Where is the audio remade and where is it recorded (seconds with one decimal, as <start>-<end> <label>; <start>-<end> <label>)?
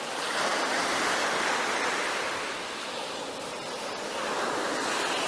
0.0-5.3 recorded